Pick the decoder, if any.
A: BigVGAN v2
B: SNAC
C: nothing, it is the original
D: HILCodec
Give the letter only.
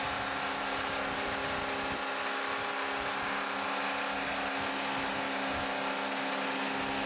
C